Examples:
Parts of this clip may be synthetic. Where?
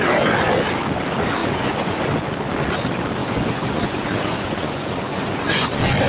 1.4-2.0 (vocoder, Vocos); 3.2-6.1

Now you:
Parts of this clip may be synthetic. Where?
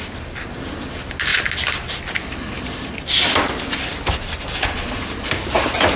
none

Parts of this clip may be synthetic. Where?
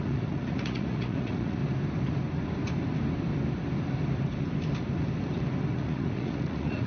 0.0-1.6 (vocoder, Vocos); 5.7-6.9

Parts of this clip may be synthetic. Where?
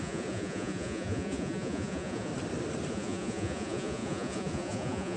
0.0-2.3 (vocoder, Vocos); 2.9-5.2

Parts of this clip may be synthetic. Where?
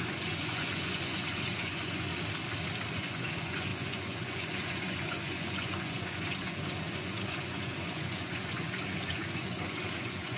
0.0-2.1 (vocoder, Vocos); 2.9-10.4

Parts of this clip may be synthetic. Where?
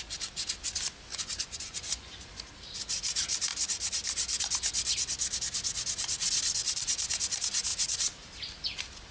1.1-2.3 (vocoder, Vocos)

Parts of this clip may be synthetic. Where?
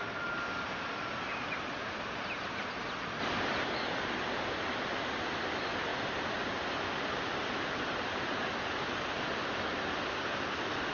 none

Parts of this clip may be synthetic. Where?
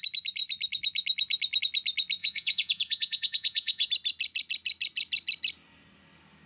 2.2-3.9 (vocoder, Vocos)